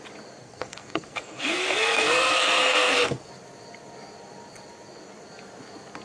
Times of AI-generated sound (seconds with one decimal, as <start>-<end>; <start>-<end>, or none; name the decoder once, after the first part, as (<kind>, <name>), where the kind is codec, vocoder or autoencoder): 0.4-3.3 (codec, SNAC)